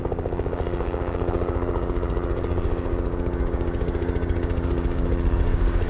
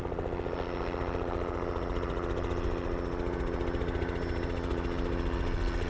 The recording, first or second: second